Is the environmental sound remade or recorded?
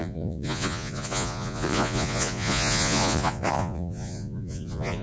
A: remade